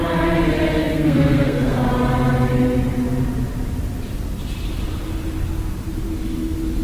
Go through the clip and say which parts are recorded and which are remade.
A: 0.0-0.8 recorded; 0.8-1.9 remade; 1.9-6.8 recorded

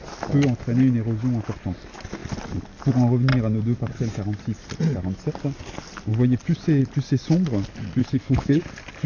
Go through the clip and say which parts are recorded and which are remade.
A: 0.0-8.0 recorded; 8.0-8.6 remade; 8.6-9.1 recorded

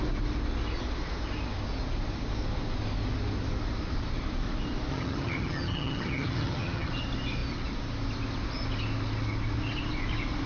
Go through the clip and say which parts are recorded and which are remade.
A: 0.0-4.9 recorded; 4.9-6.9 remade; 6.9-10.5 recorded

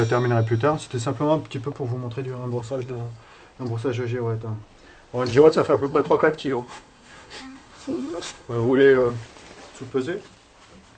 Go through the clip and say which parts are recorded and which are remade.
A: 0.0-2.6 recorded; 2.6-3.4 remade; 3.4-5.3 recorded; 5.3-9.1 remade; 9.1-11.0 recorded

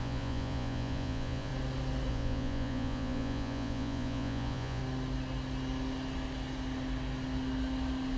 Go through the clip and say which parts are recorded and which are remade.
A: 0.0-1.5 remade; 1.5-2.1 recorded; 2.1-4.8 remade; 4.8-8.2 recorded

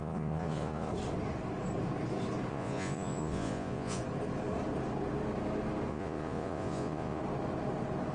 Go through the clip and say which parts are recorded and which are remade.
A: 0.0-0.9 remade; 0.9-2.5 recorded; 2.5-4.0 remade; 4.0-5.9 recorded; 5.9-7.2 remade; 7.2-8.1 recorded

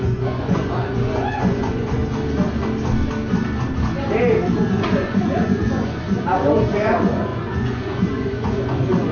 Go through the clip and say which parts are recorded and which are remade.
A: 0.0-2.0 remade; 2.0-4.7 recorded; 4.7-9.1 remade

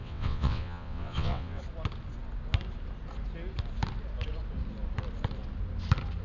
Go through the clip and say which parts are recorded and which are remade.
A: 0.0-1.6 remade; 1.6-6.2 recorded